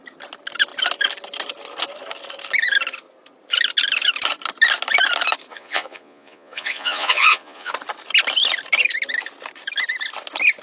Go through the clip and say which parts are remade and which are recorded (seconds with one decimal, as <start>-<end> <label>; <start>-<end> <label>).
0.0-5.5 recorded; 5.5-7.7 remade; 7.7-10.6 recorded